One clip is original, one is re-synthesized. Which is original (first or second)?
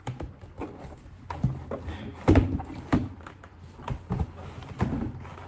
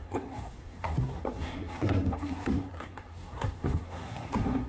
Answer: first